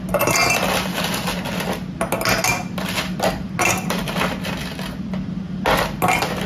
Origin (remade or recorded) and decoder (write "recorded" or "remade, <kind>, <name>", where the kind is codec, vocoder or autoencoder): recorded